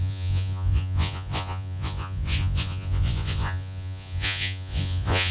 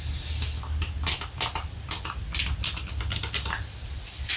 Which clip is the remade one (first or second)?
first